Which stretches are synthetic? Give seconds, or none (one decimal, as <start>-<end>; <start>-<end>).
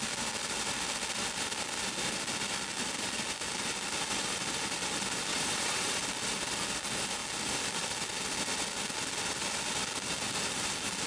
5.3-6.0